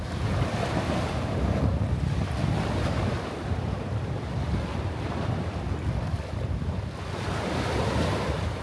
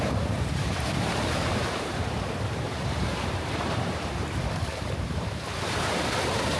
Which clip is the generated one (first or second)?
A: second